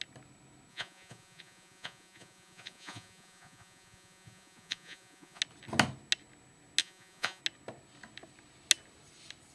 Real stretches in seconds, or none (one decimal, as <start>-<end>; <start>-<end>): 0.0-0.7; 5.4-6.8; 7.4-9.5